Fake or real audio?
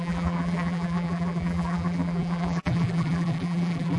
fake